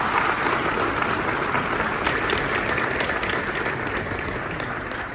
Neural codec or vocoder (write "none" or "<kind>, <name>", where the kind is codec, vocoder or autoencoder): none